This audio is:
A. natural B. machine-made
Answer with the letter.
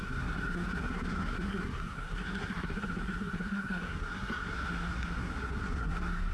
B